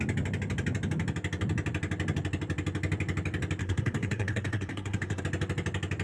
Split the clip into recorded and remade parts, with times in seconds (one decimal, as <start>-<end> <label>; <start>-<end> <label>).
0.0-3.6 recorded; 3.6-5.2 remade; 5.2-6.0 recorded